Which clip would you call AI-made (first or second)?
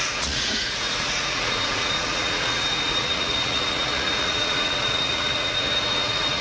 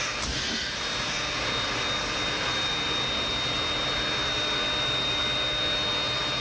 first